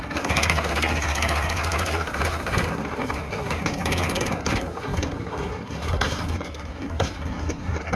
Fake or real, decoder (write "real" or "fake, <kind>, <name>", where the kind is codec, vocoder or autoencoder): fake, codec, SNAC